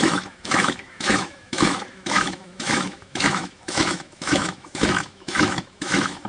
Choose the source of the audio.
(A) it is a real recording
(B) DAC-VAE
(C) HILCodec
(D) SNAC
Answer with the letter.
B